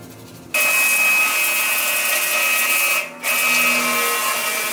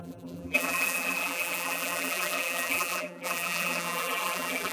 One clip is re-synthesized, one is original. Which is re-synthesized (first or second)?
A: second